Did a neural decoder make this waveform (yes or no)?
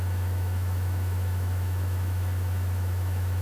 yes